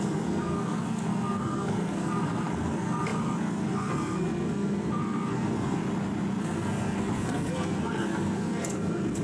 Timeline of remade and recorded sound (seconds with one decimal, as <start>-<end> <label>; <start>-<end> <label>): 0.0-5.8 remade; 5.8-6.4 recorded; 6.4-9.2 remade